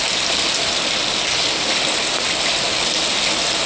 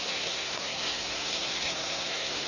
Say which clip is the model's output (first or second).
second